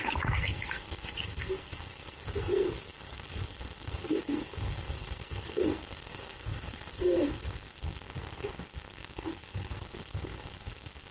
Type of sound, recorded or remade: remade